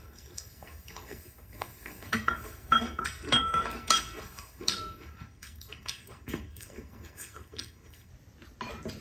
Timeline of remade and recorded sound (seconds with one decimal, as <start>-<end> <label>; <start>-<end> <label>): 0.0-8.1 remade; 8.1-9.0 recorded